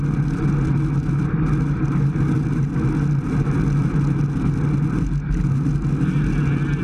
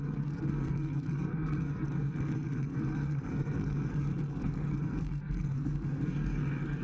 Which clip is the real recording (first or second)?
first